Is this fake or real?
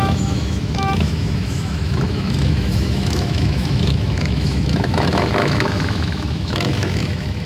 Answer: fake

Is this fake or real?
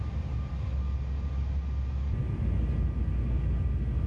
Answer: real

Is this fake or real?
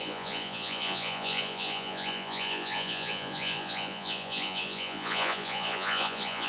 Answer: fake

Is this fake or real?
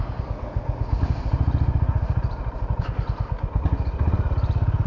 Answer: real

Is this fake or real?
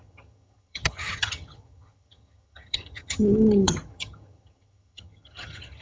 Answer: fake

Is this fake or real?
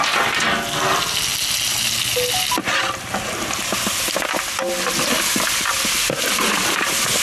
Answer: real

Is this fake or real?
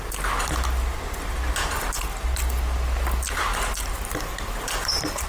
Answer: real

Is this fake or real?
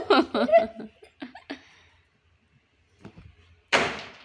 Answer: fake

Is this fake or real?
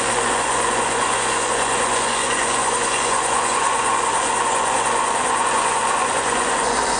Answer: fake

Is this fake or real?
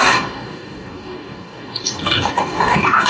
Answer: fake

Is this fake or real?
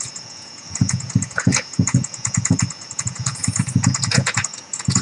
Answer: fake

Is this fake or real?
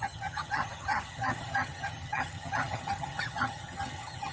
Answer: fake